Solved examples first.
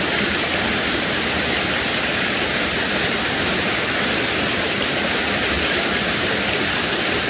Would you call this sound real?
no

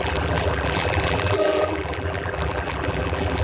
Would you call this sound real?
no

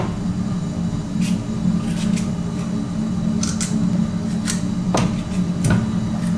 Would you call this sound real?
yes